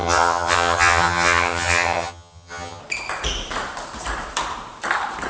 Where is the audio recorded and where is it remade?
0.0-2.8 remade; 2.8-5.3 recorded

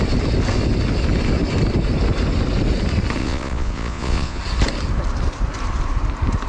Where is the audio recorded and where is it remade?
0.0-3.2 recorded; 3.2-4.4 remade; 4.4-6.5 recorded

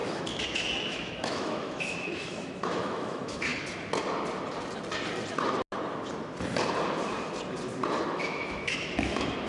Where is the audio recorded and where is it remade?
0.0-3.5 remade; 3.5-8.1 recorded; 8.1-9.5 remade

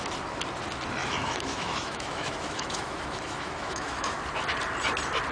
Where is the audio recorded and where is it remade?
0.0-1.0 recorded; 1.0-4.2 remade; 4.2-5.3 recorded

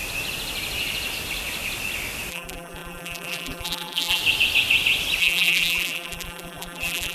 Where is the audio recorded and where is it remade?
0.0-2.3 recorded; 2.3-4.2 remade; 4.2-5.2 recorded; 5.2-7.1 remade

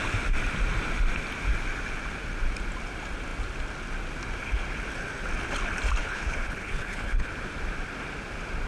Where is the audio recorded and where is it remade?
0.0-6.0 recorded; 6.0-7.3 remade; 7.3-8.7 recorded

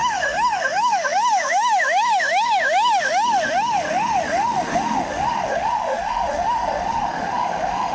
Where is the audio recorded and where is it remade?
0.0-7.9 remade

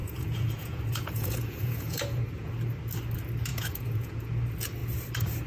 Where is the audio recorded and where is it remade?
0.0-2.5 remade; 2.5-3.5 recorded; 3.5-4.3 remade; 4.3-5.5 recorded